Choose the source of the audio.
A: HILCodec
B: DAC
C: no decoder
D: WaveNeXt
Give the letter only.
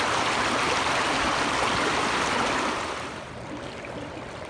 C